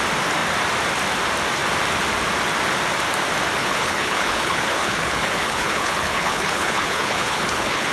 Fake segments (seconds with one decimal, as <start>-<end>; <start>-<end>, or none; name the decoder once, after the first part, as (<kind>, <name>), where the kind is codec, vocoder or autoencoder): 3.6-7.9 (codec, HILCodec)